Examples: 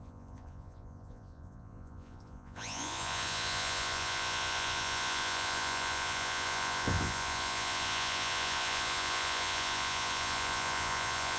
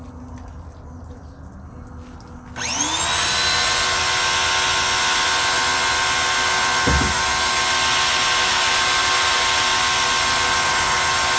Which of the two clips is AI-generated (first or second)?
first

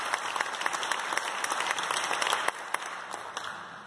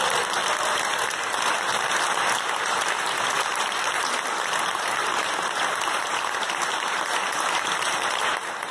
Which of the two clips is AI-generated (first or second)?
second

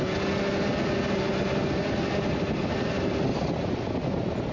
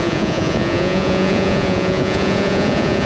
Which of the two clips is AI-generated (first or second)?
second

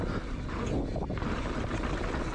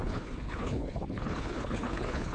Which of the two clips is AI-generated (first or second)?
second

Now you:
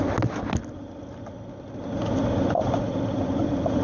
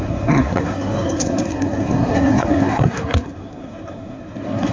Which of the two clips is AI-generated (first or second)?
second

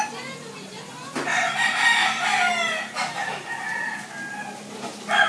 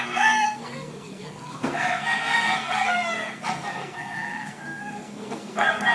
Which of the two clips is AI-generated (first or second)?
second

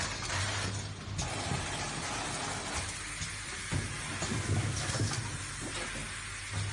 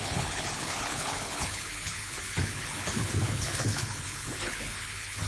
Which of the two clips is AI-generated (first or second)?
second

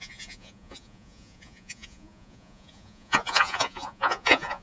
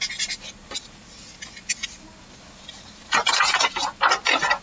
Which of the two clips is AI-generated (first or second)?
first